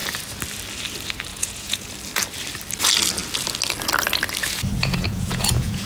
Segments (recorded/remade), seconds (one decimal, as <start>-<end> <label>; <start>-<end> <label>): 0.0-1.3 recorded; 1.3-1.9 remade; 1.9-4.8 recorded; 4.8-5.9 remade